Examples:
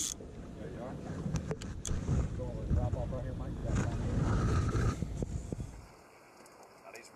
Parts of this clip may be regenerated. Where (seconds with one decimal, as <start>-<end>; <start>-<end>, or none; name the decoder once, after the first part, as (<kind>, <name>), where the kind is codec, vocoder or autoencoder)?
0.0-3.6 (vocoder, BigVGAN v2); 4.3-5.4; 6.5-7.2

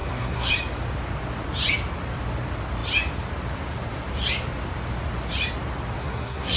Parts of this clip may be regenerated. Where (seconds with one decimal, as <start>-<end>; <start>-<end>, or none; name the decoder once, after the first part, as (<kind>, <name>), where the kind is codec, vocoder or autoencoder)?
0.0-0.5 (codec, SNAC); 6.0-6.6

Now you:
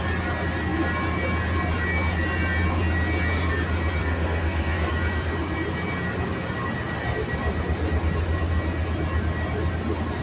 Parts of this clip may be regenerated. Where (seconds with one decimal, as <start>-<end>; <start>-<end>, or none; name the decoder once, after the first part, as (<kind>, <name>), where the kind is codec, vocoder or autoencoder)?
4.0-4.9 (codec, SNAC)

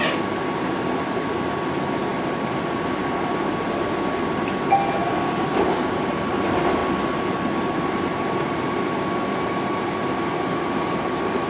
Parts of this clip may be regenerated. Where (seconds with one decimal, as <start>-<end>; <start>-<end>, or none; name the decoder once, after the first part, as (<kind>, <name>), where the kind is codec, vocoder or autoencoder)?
2.1-3.3 (vocoder, BigVGAN v2); 6.8-10.0